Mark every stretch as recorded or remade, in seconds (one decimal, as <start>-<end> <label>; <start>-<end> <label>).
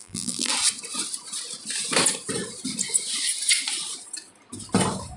0.0-0.5 remade; 0.5-5.2 recorded